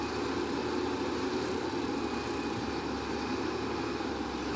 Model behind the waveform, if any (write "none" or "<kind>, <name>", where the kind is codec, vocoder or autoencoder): none